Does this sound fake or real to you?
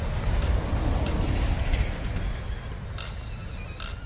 real